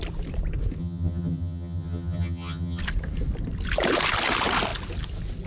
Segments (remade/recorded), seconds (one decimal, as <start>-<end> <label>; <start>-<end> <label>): 0.0-0.8 recorded; 0.8-2.8 remade; 2.8-5.5 recorded